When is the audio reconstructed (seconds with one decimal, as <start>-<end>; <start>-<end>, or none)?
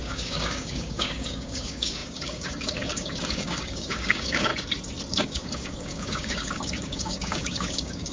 0.0-4.5; 5.1-8.1